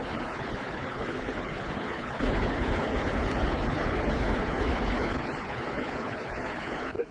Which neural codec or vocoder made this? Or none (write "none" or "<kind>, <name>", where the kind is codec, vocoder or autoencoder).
codec, HILCodec